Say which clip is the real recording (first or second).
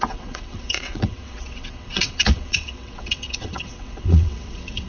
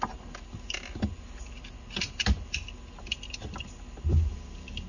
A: second